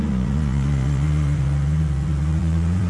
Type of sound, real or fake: fake